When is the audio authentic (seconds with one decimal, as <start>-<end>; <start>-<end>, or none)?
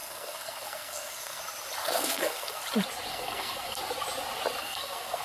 1.4-1.8; 2.6-3.1; 3.8-4.6